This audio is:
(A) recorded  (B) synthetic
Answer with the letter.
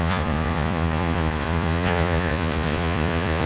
B